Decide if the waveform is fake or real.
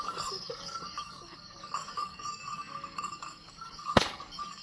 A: fake